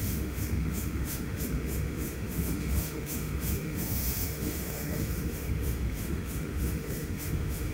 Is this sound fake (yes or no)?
yes